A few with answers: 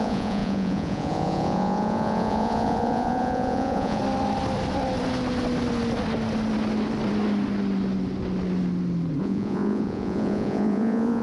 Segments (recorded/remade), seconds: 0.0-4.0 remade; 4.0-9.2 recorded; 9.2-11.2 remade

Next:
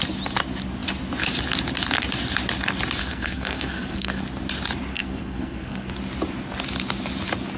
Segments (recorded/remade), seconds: 0.0-3.0 recorded; 3.0-4.2 remade; 4.2-4.9 recorded; 4.9-5.9 remade; 5.9-7.6 recorded

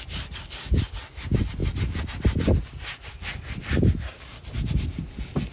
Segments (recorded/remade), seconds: 0.0-5.5 recorded

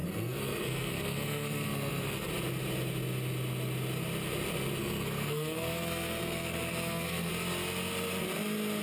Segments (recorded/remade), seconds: 0.0-2.3 remade; 2.3-4.8 recorded; 4.8-7.3 remade; 7.3-8.8 recorded

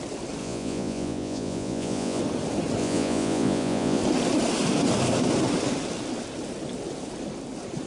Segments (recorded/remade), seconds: 0.0-0.4 recorded; 0.4-2.2 remade; 2.2-2.8 recorded; 2.8-4.0 remade; 4.0-7.9 recorded